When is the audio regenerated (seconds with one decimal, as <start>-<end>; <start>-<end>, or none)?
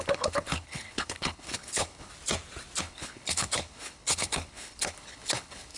0.0-2.1; 2.8-5.8